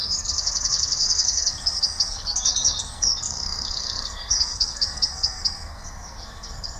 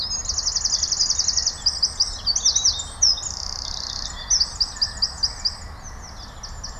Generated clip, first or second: first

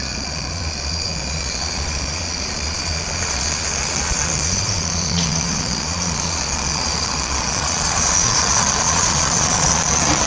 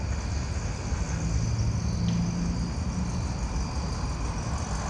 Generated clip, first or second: first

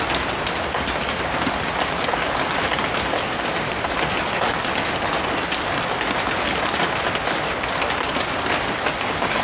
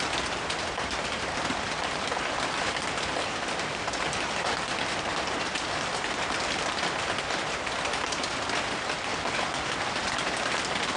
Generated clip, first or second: second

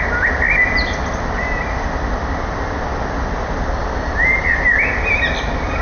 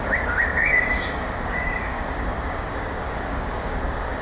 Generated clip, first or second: second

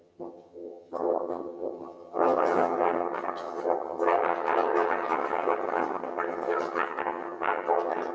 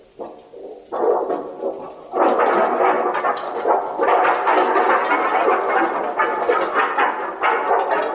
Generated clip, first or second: first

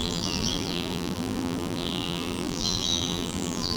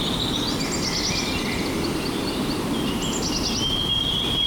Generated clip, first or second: first